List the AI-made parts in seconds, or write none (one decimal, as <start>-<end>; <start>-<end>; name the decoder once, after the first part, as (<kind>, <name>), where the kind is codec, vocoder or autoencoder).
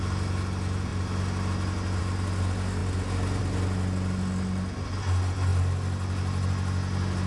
none